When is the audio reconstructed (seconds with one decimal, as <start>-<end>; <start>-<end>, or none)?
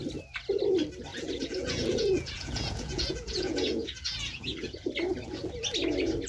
1.1-4.9